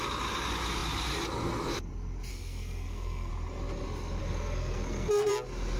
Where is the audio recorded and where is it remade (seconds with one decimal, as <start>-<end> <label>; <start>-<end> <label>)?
0.0-2.3 recorded; 2.3-3.3 remade; 3.3-4.2 recorded; 4.2-5.3 remade; 5.3-5.8 recorded